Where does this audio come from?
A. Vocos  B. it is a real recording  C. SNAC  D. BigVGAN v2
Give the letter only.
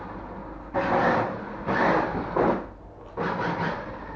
B